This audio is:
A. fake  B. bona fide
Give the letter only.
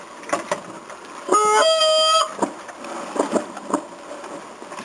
B